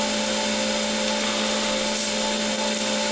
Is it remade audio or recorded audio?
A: recorded